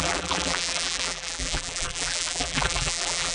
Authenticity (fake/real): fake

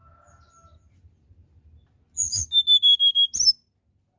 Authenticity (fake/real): real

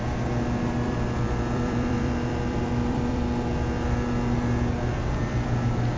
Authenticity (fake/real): fake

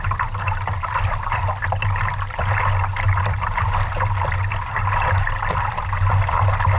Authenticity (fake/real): real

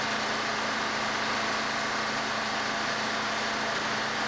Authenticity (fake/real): real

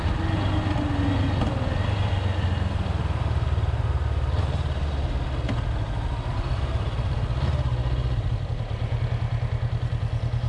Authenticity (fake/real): real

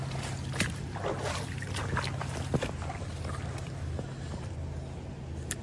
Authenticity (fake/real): real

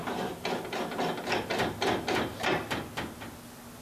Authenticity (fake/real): real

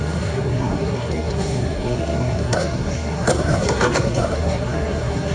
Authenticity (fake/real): fake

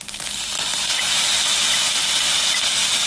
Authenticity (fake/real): real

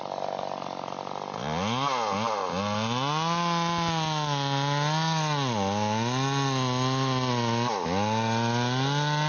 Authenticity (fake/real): real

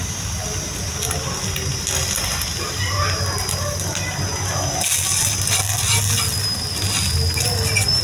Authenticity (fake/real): real